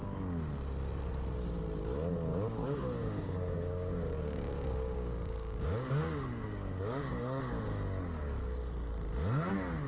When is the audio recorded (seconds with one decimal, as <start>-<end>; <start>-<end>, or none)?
0.0-2.3; 7.4-9.9